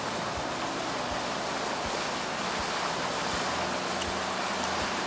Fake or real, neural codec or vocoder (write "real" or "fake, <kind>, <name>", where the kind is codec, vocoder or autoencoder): real